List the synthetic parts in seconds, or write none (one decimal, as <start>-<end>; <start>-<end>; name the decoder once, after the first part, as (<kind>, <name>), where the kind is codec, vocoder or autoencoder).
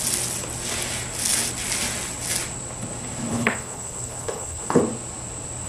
3.3-4.8 (codec, HILCodec)